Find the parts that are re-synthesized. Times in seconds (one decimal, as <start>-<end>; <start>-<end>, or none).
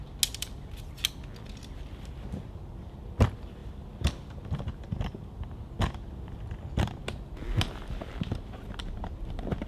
none